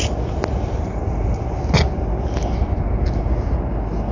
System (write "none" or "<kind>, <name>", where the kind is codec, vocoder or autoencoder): none